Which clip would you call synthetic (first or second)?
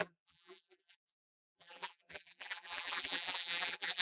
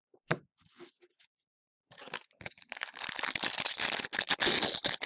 first